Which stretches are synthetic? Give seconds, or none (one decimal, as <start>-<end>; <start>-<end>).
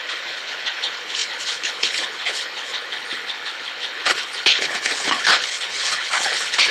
0.0-6.7